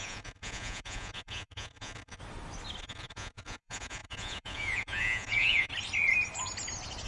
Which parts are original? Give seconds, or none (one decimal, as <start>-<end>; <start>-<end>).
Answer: 2.2-2.8; 5.7-7.1